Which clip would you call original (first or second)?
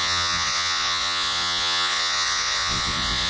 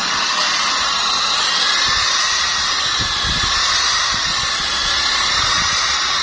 second